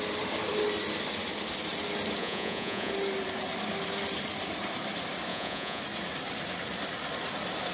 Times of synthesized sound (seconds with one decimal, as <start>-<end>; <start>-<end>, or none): 2.2-2.9; 5.3-5.8